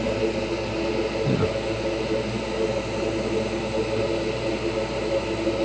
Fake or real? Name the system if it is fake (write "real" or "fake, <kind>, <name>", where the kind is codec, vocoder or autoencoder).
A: real